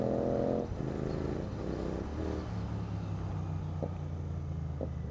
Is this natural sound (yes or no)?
yes